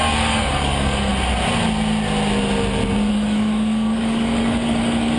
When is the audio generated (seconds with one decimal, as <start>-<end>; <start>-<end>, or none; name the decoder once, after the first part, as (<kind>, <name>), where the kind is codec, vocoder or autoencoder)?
0.0-1.1 (codec, DAC); 3.1-5.2